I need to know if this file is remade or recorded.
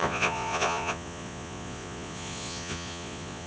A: remade